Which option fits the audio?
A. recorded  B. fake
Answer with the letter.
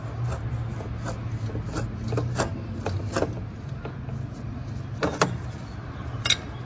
A